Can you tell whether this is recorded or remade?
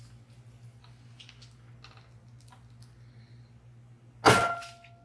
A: recorded